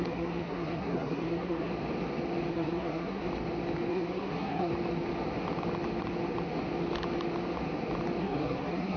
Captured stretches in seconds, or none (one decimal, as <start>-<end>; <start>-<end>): 1.7-2.5; 3.3-3.9; 4.7-8.2